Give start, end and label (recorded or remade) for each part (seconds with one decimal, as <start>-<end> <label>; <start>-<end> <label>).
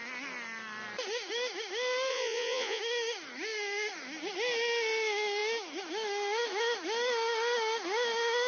0.0-2.1 recorded; 2.1-2.8 remade; 2.8-8.5 recorded